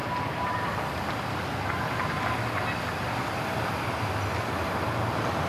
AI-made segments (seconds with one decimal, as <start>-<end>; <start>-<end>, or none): none